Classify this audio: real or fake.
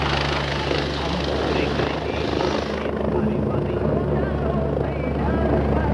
real